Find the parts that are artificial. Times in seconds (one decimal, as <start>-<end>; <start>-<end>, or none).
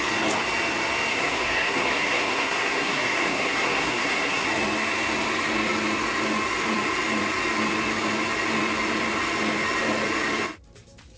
1.1-4.5